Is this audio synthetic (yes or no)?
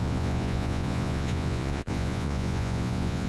yes